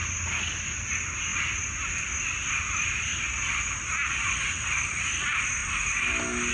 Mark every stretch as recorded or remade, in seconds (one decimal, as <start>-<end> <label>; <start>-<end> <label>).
0.0-6.5 recorded